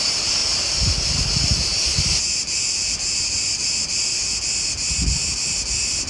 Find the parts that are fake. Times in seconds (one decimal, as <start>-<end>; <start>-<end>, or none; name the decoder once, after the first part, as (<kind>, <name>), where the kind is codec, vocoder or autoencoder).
0.4-4.1 (vocoder, BigVGAN v2)